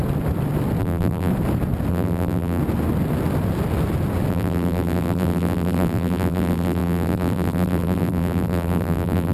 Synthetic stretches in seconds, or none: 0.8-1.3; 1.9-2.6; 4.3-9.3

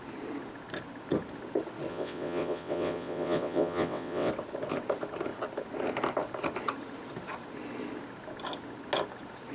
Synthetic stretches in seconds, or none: 1.9-4.3